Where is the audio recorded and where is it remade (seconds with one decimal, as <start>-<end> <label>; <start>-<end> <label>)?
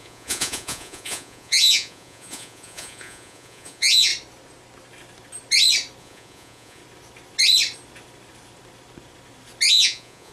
0.0-4.1 remade; 4.1-6.0 recorded; 6.0-6.8 remade; 6.8-9.7 recorded; 9.7-10.3 remade